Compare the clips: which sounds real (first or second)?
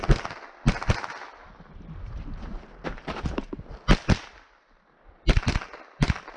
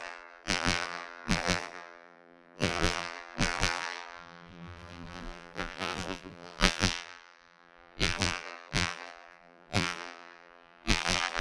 first